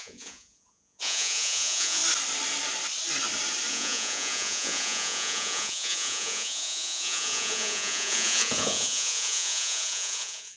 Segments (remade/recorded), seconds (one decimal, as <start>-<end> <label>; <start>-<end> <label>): 0.0-2.0 remade; 2.0-3.7 recorded; 3.7-10.6 remade